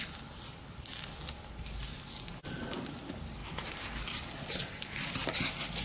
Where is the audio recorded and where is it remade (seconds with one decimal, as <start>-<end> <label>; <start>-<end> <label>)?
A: 0.0-5.8 recorded